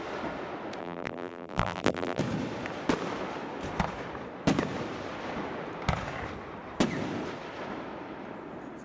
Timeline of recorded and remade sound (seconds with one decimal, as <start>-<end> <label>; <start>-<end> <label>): 0.0-0.8 recorded; 0.8-2.2 remade; 2.2-8.8 recorded

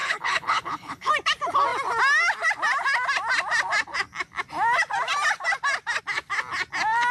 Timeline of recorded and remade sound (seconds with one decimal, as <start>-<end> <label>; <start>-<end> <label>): 0.0-1.1 remade; 1.1-7.1 recorded

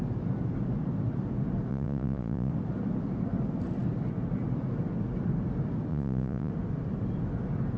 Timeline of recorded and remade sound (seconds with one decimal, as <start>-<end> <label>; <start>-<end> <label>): 0.0-1.7 recorded; 1.7-2.5 remade; 2.5-5.9 recorded; 5.9-6.5 remade; 6.5-7.8 recorded

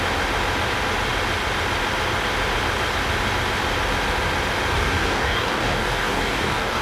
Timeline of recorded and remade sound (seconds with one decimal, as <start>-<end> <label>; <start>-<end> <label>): 0.0-4.7 recorded; 4.7-6.8 remade